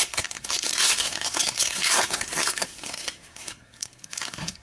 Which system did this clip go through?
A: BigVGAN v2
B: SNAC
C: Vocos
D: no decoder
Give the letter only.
B